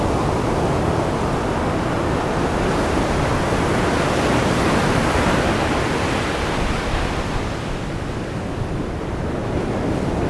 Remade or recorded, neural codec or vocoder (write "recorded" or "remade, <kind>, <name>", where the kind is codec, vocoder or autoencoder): recorded